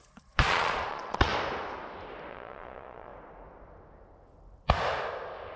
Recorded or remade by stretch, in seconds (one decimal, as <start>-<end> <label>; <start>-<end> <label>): 0.0-1.3 remade; 1.3-2.3 recorded; 2.3-3.1 remade; 3.1-5.6 recorded